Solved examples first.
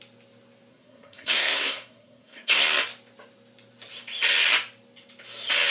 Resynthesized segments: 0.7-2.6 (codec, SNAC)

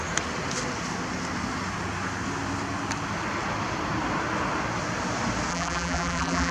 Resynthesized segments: 5.5-6.5 (vocoder, BigVGAN v2)

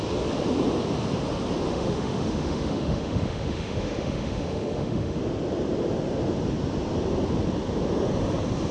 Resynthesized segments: 1.7-5.2 (autoencoder, DAC-VAE)

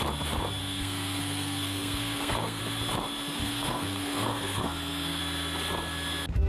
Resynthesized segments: 0.6-2.6 (codec, SNAC); 3.4-5.2

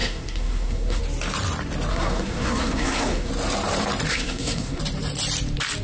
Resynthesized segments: 0.0-1.0 (codec, SNAC); 1.9-3.3; 4.1-4.8

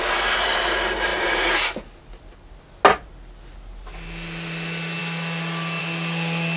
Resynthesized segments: none